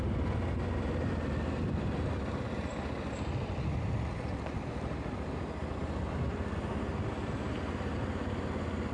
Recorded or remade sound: recorded